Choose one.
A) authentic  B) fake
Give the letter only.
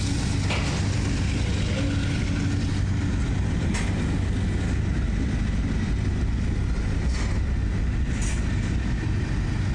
A